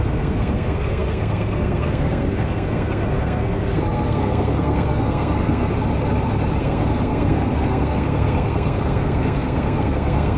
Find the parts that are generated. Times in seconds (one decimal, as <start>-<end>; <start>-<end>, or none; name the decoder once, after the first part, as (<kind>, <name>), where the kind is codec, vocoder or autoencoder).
0.0-5.7 (codec, SNAC); 6.6-10.4